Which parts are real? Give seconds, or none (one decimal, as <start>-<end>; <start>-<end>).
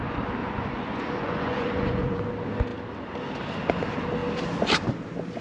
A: 0.0-0.4; 2.2-5.4